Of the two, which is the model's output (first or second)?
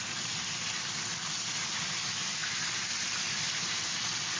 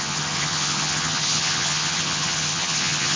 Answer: second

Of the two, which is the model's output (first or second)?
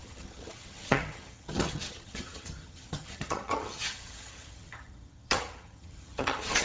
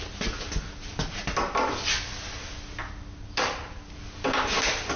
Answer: first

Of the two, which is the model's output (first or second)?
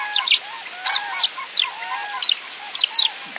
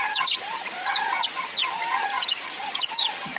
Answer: second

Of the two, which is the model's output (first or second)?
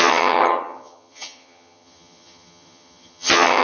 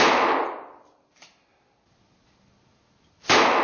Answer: first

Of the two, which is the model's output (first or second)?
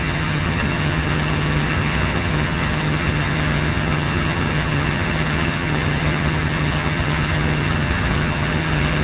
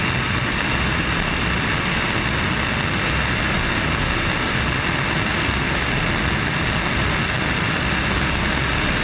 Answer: first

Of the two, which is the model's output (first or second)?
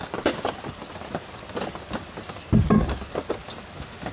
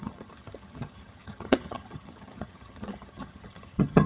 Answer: second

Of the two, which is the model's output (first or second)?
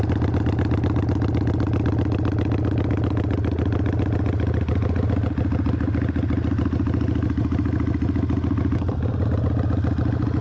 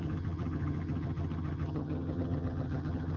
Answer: second